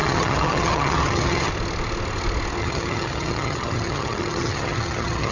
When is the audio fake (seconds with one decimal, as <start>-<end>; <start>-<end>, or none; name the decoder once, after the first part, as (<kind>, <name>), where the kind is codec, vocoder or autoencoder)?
0.0-1.5 (vocoder, HiFi-GAN); 2.6-5.3